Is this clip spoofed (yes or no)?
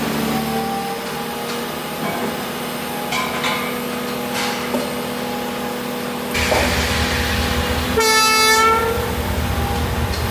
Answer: no